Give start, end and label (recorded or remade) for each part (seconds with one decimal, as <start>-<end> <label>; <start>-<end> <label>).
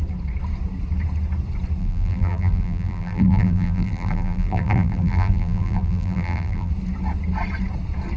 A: 0.0-1.8 recorded; 1.8-6.7 remade; 6.7-8.2 recorded